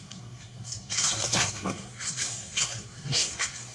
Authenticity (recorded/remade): remade